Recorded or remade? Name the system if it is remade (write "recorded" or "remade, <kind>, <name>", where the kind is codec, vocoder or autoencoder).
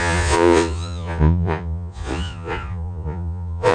remade, vocoder, Vocos